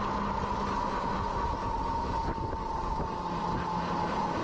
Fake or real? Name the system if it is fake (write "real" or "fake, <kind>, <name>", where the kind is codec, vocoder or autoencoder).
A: real